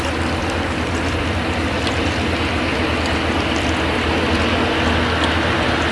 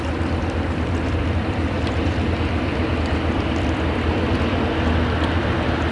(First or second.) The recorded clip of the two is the first